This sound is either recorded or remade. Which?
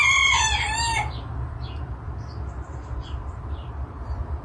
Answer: remade